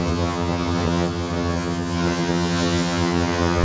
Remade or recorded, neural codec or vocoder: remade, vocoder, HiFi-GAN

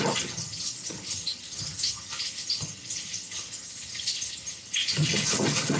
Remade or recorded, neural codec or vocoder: remade, vocoder, HiFi-GAN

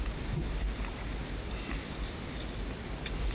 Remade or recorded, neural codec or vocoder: recorded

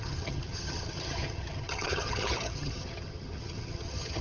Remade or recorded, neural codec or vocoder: remade, vocoder, HiFi-GAN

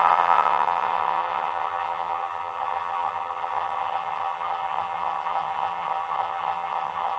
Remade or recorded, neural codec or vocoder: remade, vocoder, HiFi-GAN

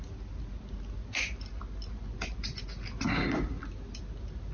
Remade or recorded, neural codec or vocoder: recorded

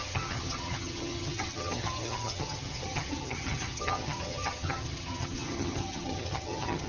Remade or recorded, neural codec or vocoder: remade, vocoder, HiFi-GAN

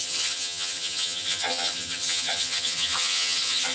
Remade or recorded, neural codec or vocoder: remade, vocoder, HiFi-GAN